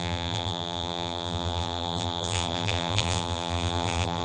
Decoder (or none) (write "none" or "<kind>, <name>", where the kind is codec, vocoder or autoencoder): vocoder, BigVGAN v2